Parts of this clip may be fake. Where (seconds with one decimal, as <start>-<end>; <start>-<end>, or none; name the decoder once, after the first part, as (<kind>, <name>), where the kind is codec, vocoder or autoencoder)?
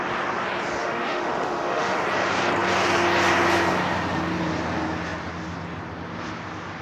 0.8-2.0 (autoencoder, DAC-VAE)